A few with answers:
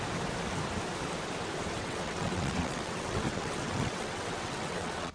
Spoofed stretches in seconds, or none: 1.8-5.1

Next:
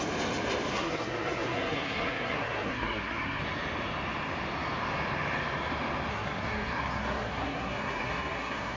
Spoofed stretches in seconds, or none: 0.7-3.4; 6.1-8.8

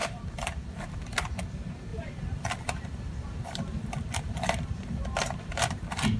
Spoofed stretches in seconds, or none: 0.0-0.7; 1.9-5.6

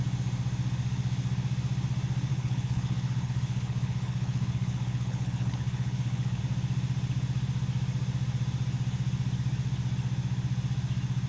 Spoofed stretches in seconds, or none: 2.3-6.4

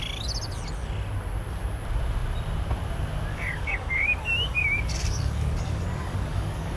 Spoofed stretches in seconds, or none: 3.3-6.8

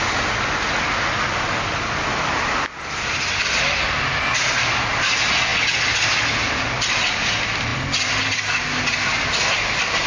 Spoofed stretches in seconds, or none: none

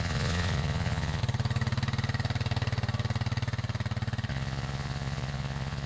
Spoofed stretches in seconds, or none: 0.0-1.2; 4.3-5.9

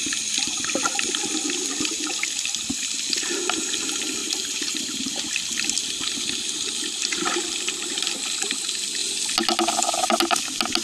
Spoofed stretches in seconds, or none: 4.2-5.3